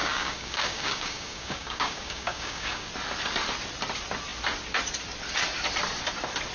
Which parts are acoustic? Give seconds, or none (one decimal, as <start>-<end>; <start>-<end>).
2.9-6.5